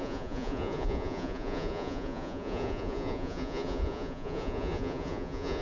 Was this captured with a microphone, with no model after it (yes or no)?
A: no